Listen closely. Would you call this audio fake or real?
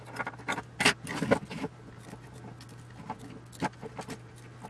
real